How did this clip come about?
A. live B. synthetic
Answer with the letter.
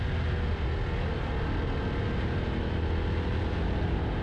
A